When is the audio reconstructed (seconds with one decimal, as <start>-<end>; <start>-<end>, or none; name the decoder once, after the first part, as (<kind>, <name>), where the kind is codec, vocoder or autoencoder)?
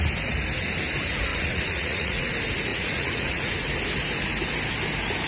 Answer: 1.3-2.3 (vocoder, Vocos); 2.7-3.5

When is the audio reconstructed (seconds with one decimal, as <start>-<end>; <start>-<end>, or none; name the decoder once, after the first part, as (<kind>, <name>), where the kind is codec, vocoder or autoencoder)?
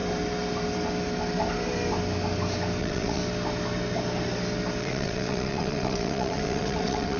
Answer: 2.8-3.2 (vocoder, WaveNeXt); 4.8-7.2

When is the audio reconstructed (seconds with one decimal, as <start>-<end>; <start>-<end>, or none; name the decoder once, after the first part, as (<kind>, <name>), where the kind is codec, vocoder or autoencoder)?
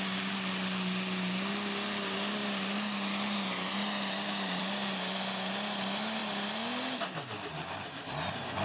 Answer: none